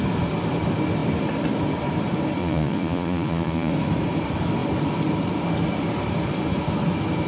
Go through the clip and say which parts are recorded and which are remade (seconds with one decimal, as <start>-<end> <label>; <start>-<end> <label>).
0.0-2.4 recorded; 2.4-3.7 remade; 3.7-7.3 recorded